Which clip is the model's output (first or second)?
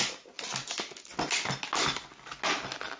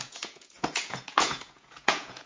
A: second